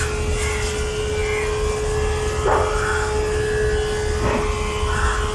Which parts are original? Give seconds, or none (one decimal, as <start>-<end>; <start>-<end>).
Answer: 0.0-5.3